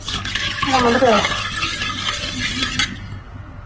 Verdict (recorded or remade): recorded